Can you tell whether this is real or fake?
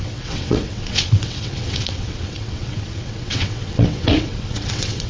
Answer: fake